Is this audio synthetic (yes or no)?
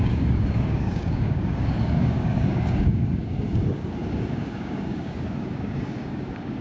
yes